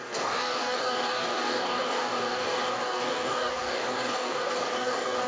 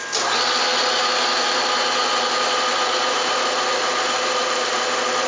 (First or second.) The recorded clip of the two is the second